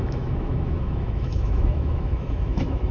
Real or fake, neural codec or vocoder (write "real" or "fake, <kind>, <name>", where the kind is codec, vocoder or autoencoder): fake, autoencoder, DAC-VAE